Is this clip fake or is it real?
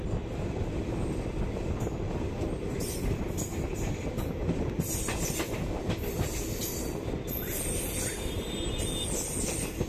real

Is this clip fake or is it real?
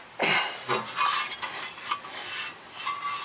real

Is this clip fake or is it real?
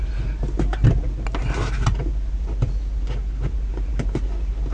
real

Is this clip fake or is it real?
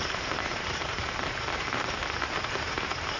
fake